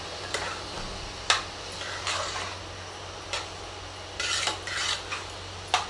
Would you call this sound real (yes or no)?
yes